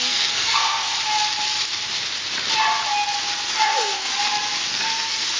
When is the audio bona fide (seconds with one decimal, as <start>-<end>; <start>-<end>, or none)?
0.9-3.5; 4.1-4.7